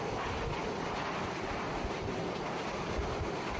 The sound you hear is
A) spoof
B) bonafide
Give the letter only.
B